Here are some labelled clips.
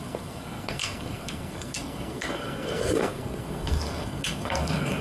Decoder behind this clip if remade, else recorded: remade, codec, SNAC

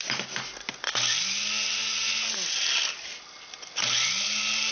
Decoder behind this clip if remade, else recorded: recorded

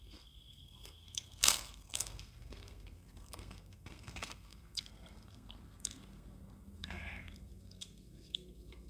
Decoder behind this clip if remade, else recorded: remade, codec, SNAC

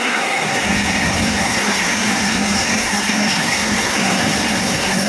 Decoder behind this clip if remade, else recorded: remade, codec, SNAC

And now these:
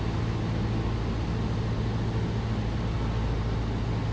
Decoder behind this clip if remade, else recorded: recorded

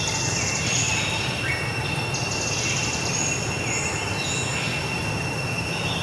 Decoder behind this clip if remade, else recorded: recorded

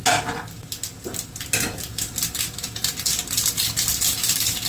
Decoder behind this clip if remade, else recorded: recorded